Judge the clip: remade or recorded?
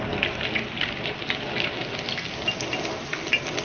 recorded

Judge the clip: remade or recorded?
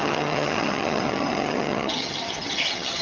remade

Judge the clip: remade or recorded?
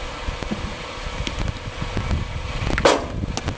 recorded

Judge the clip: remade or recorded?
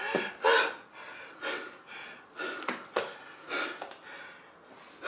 recorded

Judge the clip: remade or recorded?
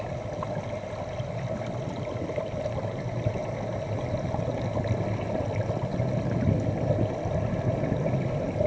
recorded